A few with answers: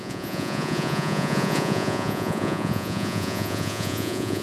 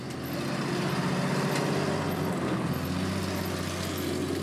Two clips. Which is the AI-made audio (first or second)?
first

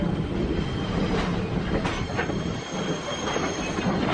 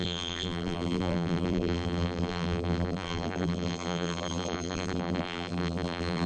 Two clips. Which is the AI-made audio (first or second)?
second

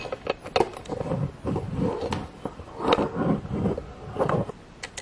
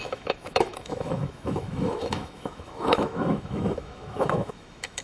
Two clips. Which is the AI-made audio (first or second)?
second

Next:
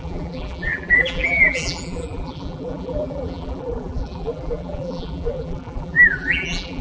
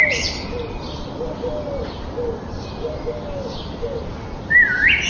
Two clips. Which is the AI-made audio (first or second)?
first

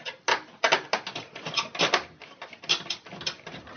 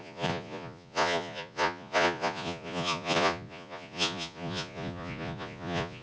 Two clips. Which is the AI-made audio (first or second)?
second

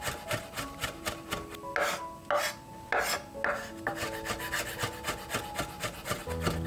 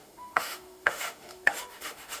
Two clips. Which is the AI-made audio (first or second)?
second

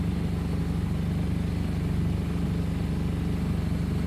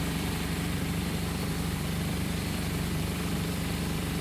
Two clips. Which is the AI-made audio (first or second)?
second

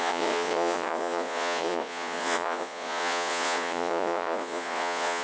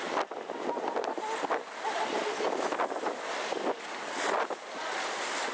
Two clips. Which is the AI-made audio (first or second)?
first